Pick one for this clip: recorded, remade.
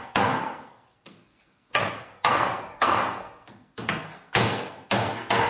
remade